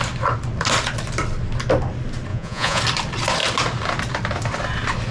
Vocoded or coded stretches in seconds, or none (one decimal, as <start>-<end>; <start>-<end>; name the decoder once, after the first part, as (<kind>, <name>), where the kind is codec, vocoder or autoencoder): 2.3-2.8 (vocoder, Vocos)